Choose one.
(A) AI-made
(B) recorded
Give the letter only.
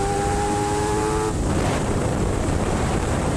A